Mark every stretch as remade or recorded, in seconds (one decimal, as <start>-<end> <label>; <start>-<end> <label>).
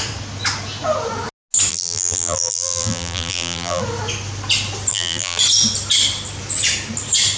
0.0-1.7 recorded; 1.7-3.8 remade; 3.8-4.9 recorded; 4.9-5.4 remade; 5.4-7.4 recorded